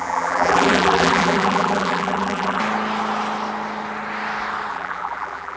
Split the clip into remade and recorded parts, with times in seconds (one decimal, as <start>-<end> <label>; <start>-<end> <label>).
0.0-2.6 remade; 2.6-4.7 recorded; 4.7-5.6 remade